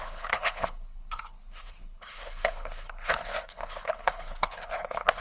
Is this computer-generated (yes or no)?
yes